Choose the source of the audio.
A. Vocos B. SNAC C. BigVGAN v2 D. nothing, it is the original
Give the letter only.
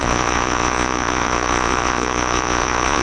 A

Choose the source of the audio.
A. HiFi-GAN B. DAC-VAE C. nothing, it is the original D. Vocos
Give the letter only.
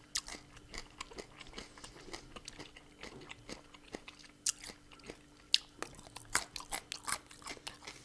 C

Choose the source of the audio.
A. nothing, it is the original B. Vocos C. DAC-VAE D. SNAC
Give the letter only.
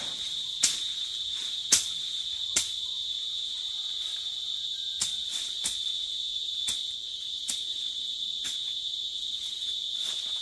A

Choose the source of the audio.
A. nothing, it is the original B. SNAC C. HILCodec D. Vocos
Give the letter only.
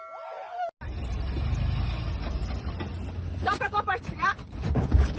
A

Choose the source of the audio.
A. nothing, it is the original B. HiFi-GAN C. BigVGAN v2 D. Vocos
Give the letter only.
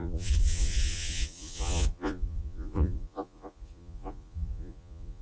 D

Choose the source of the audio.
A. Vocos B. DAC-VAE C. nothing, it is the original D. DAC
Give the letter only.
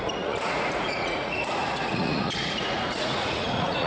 A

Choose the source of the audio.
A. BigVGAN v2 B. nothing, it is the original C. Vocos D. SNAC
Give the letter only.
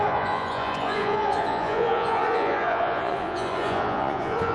C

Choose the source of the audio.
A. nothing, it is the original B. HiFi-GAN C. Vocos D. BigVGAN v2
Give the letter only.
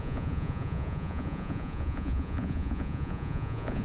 C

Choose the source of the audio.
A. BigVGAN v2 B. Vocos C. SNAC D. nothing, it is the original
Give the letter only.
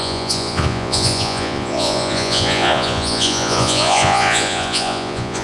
B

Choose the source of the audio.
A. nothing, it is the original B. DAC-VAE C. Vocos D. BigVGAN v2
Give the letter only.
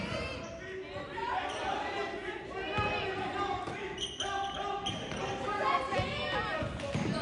A